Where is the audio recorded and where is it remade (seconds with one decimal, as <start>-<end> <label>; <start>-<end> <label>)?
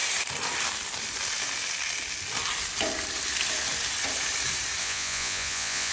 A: 0.0-4.8 recorded; 4.8-5.9 remade